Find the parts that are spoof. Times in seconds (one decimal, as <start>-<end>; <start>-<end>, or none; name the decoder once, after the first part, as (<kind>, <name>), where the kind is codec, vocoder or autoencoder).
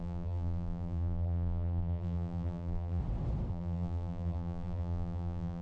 0.0-3.0 (vocoder, BigVGAN v2); 3.5-5.6